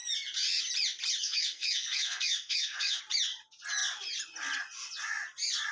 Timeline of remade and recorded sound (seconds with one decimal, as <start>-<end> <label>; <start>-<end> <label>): 0.0-1.2 recorded; 1.2-3.0 remade; 3.0-5.7 recorded